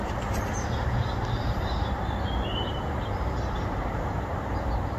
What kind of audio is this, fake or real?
fake